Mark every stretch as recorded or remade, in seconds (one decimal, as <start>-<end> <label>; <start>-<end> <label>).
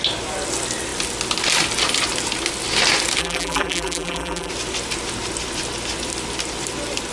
0.0-3.2 recorded; 3.2-4.5 remade; 4.5-7.1 recorded